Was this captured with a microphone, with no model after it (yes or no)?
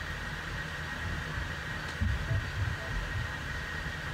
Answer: yes